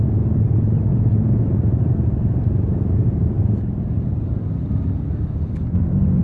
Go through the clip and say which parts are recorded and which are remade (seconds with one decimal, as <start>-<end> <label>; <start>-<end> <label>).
0.0-0.9 recorded; 0.9-1.4 remade; 1.4-6.2 recorded